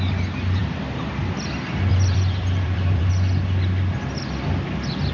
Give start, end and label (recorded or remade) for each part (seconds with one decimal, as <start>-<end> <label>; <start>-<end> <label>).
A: 0.0-1.9 recorded; 1.9-3.1 remade; 3.1-5.1 recorded